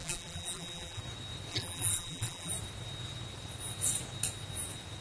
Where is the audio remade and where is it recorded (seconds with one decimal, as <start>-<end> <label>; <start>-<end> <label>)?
0.0-1.0 remade; 1.0-1.5 recorded; 1.5-2.5 remade; 2.5-5.0 recorded